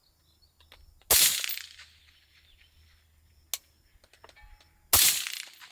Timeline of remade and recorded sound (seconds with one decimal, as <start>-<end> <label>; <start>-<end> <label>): 0.0-5.7 recorded